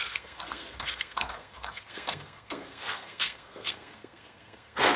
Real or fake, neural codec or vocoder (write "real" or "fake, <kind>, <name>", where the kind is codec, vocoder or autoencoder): fake, codec, SNAC